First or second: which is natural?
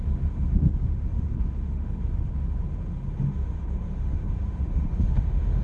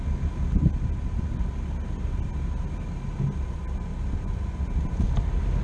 second